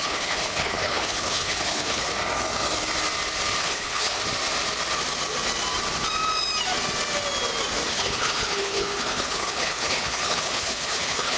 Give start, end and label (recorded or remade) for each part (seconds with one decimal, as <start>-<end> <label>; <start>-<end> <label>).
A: 0.0-2.1 remade; 2.1-3.6 recorded; 3.6-4.2 remade; 4.2-7.9 recorded; 7.9-11.4 remade